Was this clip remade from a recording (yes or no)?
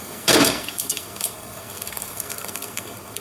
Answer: yes